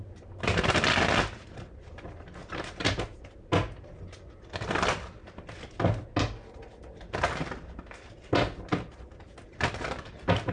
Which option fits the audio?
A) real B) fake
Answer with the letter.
A